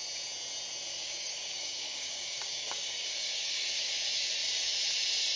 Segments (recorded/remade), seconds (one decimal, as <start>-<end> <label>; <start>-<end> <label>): 0.0-0.9 recorded; 0.9-3.9 remade; 3.9-5.4 recorded